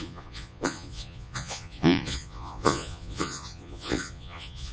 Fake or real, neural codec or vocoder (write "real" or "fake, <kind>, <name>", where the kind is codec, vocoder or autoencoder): fake, vocoder, Vocos